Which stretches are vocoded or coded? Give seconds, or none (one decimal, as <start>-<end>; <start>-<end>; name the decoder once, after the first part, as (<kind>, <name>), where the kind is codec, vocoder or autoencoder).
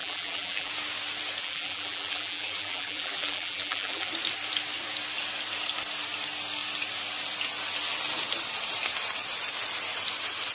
0.0-0.7 (vocoder, BigVGAN v2); 1.4-4.1